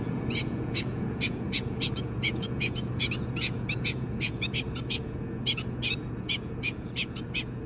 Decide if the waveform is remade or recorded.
remade